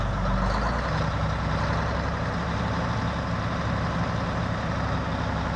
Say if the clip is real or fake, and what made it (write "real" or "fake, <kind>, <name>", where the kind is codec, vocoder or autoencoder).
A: real